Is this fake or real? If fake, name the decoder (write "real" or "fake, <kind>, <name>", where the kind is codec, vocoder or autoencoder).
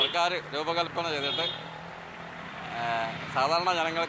real